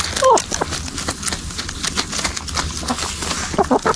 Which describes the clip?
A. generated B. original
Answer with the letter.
B